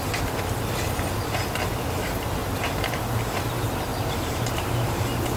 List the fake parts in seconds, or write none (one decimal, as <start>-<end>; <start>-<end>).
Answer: 3.9-5.4